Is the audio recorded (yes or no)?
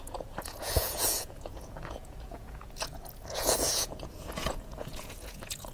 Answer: no